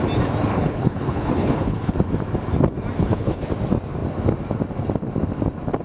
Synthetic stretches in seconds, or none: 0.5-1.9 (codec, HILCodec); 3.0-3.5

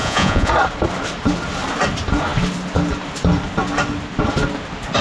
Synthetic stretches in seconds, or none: 0.0-0.5 (vocoder, Vocos)